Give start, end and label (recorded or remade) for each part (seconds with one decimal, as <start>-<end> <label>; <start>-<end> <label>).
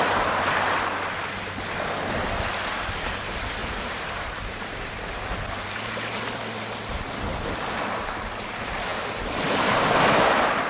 0.0-3.6 recorded; 3.6-4.1 remade; 4.1-10.7 recorded